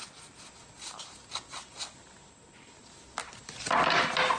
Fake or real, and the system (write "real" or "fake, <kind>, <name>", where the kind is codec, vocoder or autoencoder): real